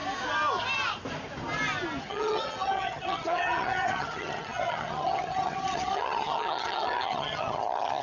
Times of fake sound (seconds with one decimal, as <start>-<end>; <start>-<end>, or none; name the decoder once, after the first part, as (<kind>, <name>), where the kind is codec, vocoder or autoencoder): 2.0-8.0 (vocoder, HiFi-GAN)